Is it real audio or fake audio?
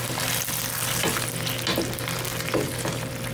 real